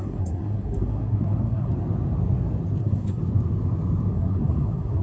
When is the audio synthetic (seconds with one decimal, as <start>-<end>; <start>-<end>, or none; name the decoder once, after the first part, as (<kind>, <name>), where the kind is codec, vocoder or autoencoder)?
0.0-1.7 (codec, SNAC); 2.8-3.2; 4.1-5.0